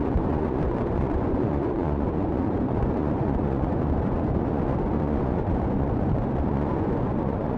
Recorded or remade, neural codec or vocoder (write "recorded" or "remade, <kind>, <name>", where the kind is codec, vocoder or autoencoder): remade, vocoder, Vocos